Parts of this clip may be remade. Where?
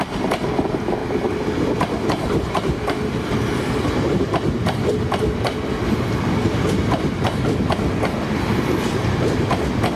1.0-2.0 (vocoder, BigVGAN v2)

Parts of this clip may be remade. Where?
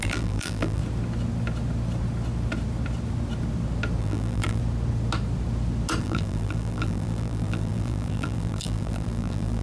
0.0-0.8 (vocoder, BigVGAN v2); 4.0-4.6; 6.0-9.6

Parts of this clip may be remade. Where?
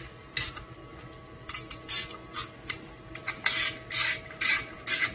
0.0-0.8 (vocoder, BigVGAN v2); 3.9-5.1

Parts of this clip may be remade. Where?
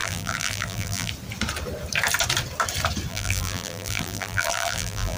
0.0-1.1 (vocoder, BigVGAN v2); 3.1-5.2